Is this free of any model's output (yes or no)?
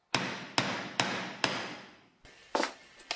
yes